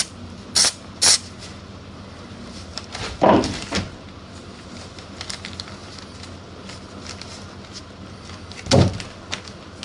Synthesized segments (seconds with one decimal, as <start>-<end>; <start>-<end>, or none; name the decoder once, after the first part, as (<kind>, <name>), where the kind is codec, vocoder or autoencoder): 2.7-3.2 (vocoder, BigVGAN v2)